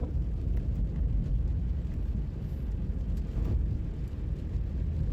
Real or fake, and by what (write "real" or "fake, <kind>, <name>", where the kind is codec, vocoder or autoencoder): real